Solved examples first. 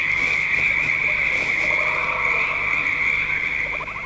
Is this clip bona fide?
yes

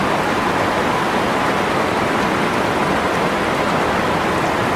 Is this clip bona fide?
yes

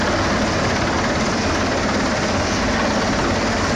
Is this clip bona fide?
yes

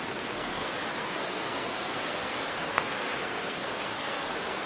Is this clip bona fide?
no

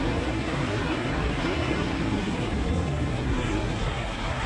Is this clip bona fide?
no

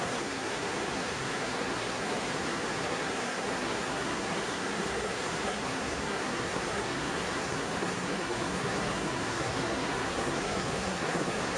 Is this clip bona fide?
no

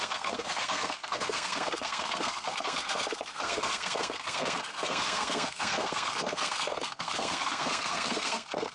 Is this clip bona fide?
no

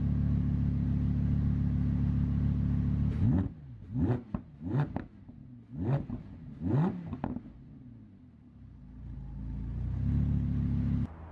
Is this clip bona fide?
yes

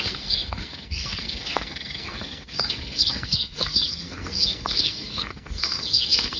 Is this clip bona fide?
no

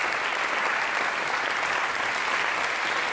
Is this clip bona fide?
yes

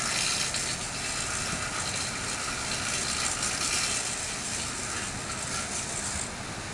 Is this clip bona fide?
yes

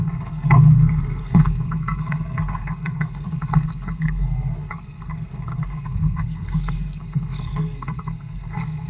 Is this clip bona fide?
no